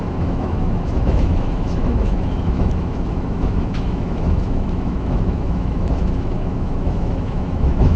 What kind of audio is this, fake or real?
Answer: fake